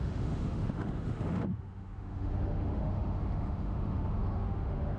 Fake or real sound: fake